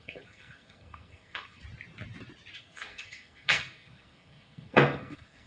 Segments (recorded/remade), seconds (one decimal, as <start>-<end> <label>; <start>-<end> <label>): 0.0-1.6 remade; 1.6-2.6 recorded; 2.6-5.5 remade